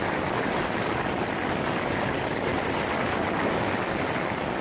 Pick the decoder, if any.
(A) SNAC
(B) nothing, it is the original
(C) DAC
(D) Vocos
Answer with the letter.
B